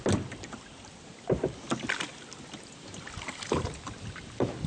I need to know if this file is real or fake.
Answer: real